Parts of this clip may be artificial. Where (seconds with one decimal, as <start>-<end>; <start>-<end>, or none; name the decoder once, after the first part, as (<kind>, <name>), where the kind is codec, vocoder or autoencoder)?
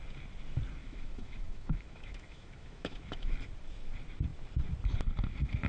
0.8-3.3 (autoencoder, DAC-VAE)